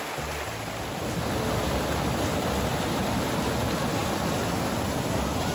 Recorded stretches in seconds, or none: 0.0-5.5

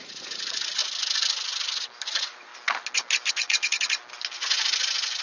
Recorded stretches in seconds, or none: 0.8-2.1; 2.5-3.3; 4.0-5.2

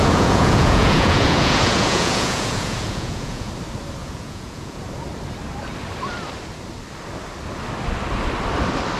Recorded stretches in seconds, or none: 3.5-4.0; 4.8-9.0

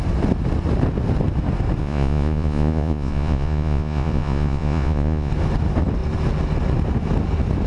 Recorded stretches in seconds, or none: 0.0-1.8; 5.3-7.7

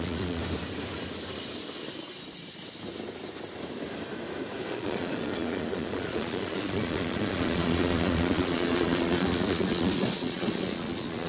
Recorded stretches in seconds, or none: 0.4-4.7

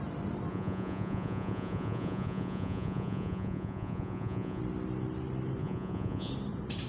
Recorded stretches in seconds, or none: 0.0-0.5; 4.6-5.6; 6.3-6.9